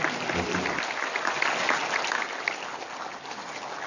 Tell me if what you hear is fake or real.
real